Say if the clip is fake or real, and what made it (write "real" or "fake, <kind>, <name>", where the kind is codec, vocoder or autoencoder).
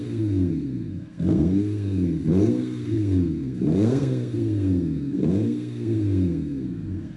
fake, codec, SNAC